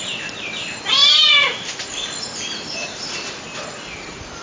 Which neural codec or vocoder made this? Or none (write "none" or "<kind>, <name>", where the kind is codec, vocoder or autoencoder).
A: vocoder, BigVGAN v2